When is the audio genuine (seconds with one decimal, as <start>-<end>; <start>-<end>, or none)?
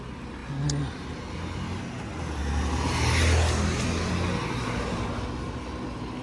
0.0-6.2